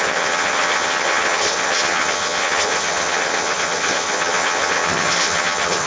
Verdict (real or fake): fake